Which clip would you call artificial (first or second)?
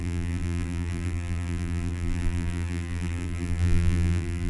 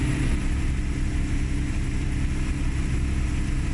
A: first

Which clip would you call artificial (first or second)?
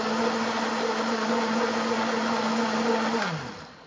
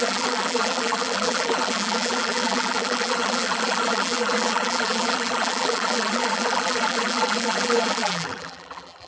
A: second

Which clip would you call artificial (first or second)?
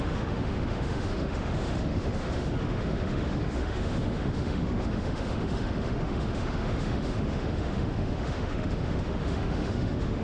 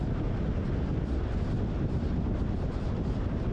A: first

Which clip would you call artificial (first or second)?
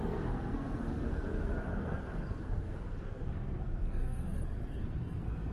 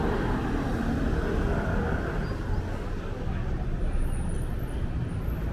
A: first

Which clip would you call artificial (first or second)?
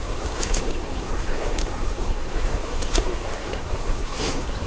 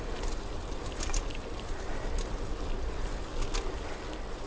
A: first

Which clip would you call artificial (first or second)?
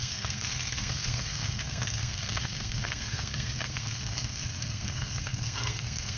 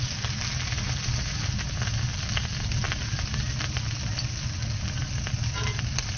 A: first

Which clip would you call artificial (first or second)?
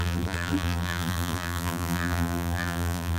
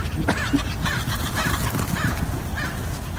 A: first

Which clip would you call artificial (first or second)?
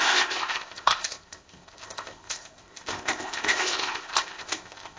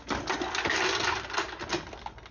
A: first